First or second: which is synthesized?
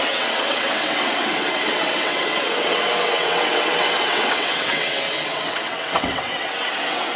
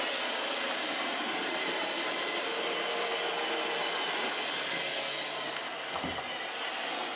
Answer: first